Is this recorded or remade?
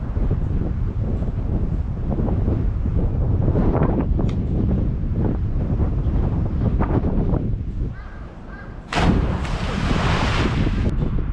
remade